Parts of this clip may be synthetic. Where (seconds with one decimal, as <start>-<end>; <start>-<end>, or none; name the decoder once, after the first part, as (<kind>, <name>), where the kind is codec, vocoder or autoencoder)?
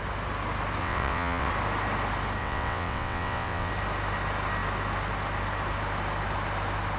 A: 0.8-1.5 (vocoder, WaveNeXt); 2.4-3.7